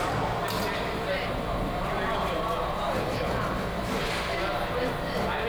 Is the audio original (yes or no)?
yes